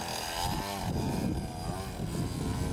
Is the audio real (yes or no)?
yes